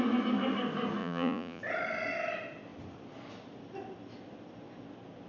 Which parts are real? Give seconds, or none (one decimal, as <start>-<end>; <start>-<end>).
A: 0.0-1.0; 1.6-5.3